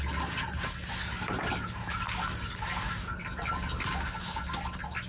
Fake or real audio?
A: real